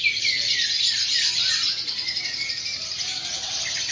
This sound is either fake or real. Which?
real